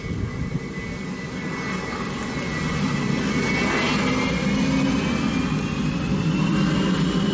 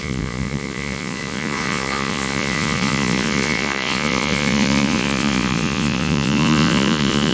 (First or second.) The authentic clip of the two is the first